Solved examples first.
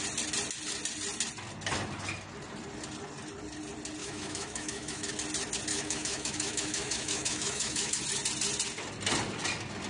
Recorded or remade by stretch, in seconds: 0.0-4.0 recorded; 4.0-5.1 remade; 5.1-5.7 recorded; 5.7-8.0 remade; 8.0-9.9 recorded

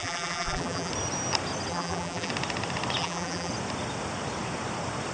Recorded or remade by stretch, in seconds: 0.0-0.9 remade; 0.9-1.7 recorded; 1.7-2.3 remade; 2.3-3.0 recorded; 3.0-3.5 remade; 3.5-5.1 recorded

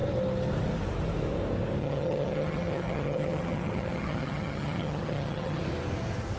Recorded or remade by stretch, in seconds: 0.0-1.8 recorded; 1.8-5.6 remade; 5.6-6.4 recorded